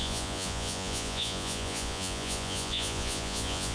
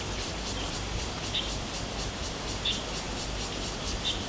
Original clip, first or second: second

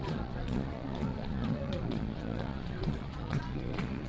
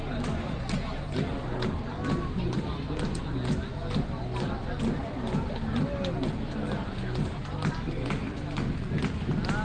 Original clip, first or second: second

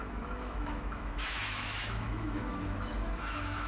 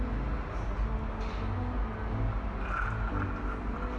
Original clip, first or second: second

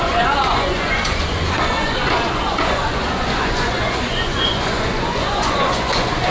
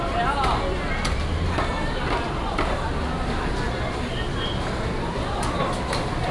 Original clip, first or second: second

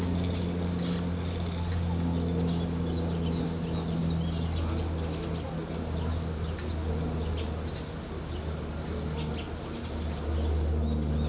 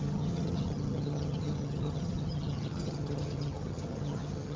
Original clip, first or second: first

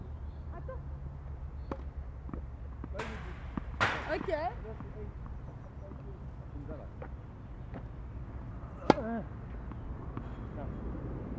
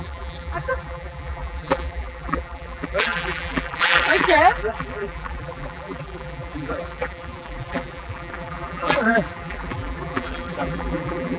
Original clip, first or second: first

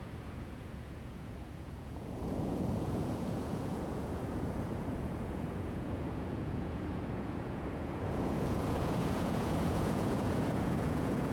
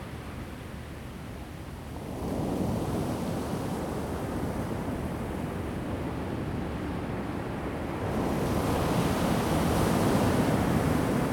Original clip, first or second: second